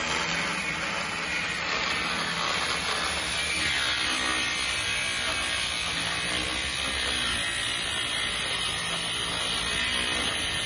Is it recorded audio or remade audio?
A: recorded